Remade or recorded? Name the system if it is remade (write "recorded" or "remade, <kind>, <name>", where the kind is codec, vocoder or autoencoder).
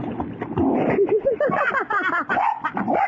recorded